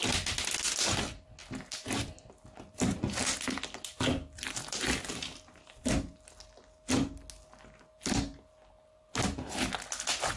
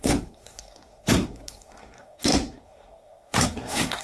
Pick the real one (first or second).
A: first